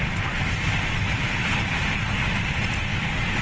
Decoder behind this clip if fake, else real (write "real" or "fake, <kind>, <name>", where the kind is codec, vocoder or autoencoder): real